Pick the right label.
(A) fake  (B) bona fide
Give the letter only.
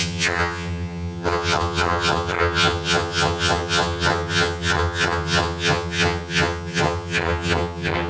A